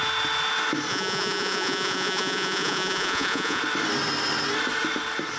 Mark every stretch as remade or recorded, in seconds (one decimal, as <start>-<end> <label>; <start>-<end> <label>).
0.0-0.9 recorded; 0.9-3.6 remade; 3.6-5.4 recorded